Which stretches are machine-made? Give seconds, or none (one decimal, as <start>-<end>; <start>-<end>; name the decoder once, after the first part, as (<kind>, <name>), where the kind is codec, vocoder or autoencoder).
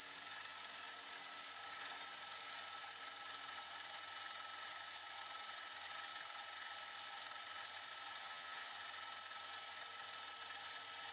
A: 8.2-8.7 (vocoder, HiFi-GAN)